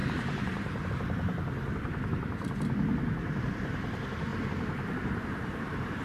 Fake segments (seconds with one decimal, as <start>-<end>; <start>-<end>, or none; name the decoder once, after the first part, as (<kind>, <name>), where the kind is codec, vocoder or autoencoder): 0.0-0.9 (vocoder, BigVGAN v2); 4.3-6.0